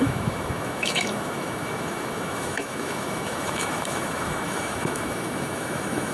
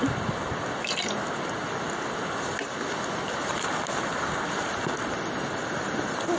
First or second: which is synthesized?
first